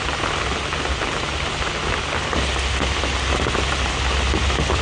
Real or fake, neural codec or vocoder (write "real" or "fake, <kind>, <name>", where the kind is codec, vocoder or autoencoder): real